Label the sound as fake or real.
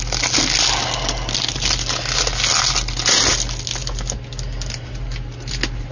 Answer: real